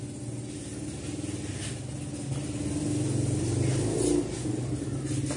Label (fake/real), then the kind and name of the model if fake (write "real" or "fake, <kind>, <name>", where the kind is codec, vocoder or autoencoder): real